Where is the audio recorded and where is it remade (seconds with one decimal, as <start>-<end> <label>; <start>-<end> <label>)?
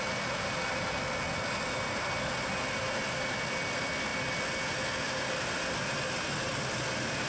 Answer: 0.0-7.3 recorded